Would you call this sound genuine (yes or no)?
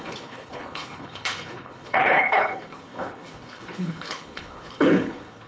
no